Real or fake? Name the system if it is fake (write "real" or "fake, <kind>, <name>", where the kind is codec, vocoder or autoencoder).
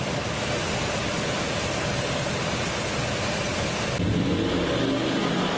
real